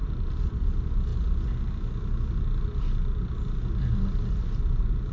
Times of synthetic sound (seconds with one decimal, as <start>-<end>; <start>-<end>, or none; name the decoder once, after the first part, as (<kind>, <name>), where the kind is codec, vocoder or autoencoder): 0.0-0.5 (vocoder, BigVGAN v2)